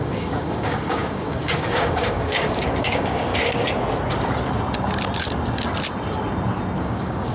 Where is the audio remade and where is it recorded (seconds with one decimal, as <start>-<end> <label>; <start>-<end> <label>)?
0.0-3.3 remade; 3.3-6.8 recorded; 6.8-7.3 remade